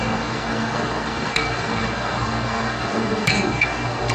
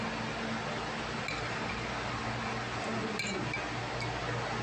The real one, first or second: second